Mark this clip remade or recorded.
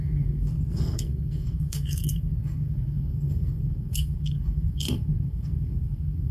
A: remade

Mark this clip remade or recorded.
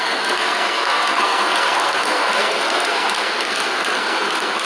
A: remade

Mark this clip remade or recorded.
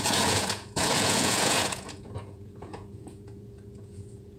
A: remade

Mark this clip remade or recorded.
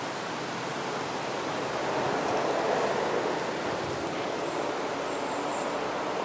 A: recorded